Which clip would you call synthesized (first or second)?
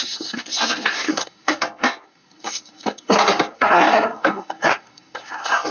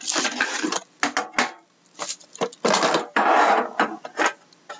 first